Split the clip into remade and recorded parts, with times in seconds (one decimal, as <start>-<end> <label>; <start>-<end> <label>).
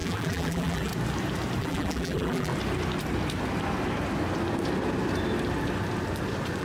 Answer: 0.0-0.9 remade; 0.9-1.6 recorded; 1.6-2.5 remade; 2.5-6.6 recorded